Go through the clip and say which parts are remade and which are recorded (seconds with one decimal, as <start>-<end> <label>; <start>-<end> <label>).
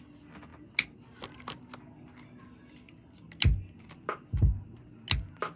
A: 0.0-5.6 recorded